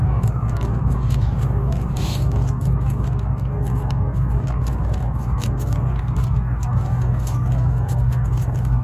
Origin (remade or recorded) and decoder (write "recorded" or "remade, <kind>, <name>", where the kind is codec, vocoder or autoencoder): remade, codec, DAC